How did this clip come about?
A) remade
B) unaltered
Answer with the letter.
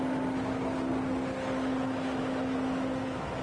B